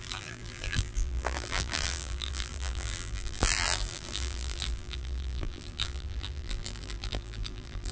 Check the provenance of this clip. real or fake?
fake